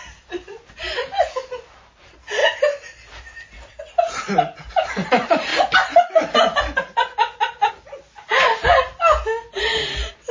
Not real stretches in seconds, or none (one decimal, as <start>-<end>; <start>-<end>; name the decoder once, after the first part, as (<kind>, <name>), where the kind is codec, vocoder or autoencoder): 0.0-2.4 (vocoder, BigVGAN v2); 4.7-5.5; 7.7-8.5; 9.6-10.3